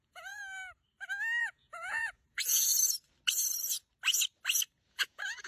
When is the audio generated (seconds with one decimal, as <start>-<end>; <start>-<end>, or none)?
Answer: 0.0-0.4; 1.4-2.7; 4.9-5.5